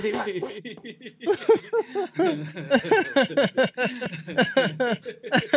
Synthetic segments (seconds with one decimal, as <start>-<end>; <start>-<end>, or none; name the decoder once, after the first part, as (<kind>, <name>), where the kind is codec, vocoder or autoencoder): 0.0-0.6 (codec, ZipCodec)